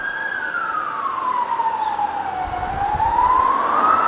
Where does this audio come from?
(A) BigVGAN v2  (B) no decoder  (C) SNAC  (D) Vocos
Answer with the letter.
B